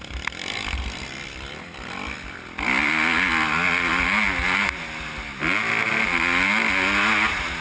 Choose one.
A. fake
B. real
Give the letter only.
B